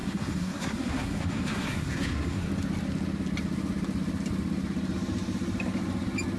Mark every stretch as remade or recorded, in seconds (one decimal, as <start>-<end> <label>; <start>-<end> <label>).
0.0-2.5 remade; 2.5-6.4 recorded